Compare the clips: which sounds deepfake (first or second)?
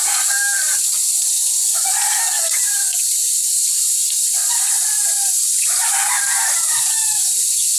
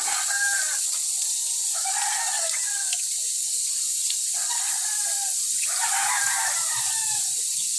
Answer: second